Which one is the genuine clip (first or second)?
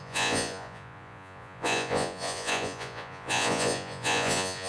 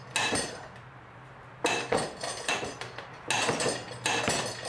second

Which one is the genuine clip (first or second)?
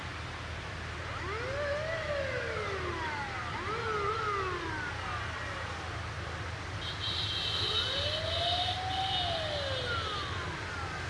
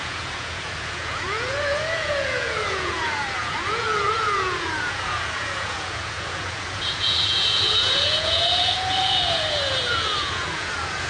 first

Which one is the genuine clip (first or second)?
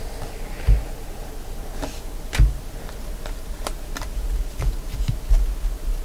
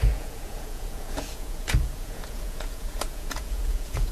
first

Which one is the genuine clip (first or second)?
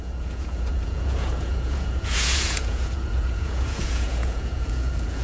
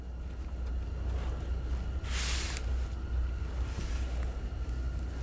second